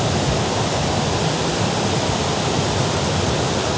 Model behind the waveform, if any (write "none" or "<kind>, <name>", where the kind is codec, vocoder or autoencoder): none